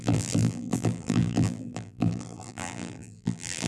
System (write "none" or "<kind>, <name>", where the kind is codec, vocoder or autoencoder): vocoder, BigVGAN v2